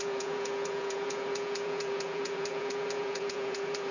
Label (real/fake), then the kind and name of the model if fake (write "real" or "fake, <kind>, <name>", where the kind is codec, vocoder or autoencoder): fake, vocoder, Vocos